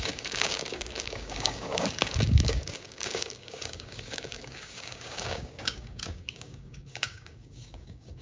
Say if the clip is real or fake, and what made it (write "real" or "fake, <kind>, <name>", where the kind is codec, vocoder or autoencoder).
fake, codec, DAC